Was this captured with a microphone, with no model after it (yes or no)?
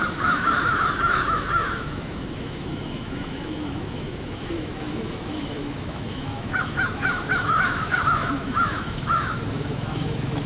no